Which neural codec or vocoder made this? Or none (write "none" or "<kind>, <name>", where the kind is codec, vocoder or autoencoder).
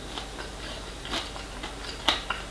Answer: none